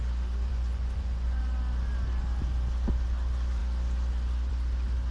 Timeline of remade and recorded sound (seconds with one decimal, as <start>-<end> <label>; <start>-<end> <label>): 0.0-0.5 recorded; 0.5-1.4 remade; 1.4-5.1 recorded